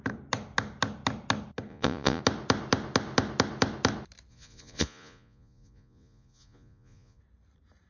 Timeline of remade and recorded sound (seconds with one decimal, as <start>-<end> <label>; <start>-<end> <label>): 0.0-1.7 recorded; 1.7-2.2 remade; 2.2-4.3 recorded; 4.3-7.2 remade; 7.2-7.9 recorded